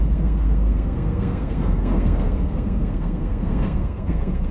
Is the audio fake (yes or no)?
yes